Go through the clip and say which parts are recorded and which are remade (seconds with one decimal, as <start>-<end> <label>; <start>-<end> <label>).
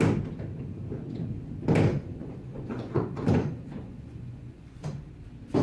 0.0-1.9 recorded; 1.9-5.1 remade; 5.1-5.6 recorded